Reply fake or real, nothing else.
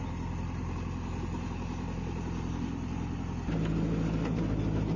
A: real